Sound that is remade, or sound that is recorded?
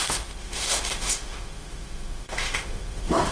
remade